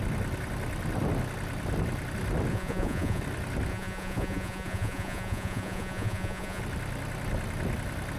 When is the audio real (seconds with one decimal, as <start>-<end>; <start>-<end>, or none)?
0.0-2.5; 3.2-3.7; 6.6-8.2